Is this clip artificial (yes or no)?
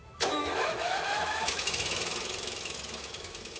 yes